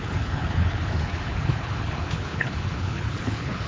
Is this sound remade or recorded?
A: remade